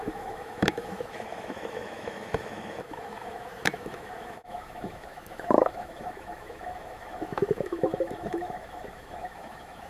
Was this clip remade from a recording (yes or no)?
yes